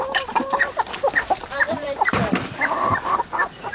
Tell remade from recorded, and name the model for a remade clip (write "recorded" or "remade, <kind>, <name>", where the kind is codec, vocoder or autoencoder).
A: remade, vocoder, BigVGAN v2